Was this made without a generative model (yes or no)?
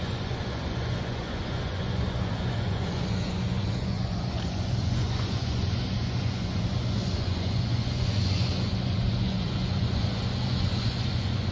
no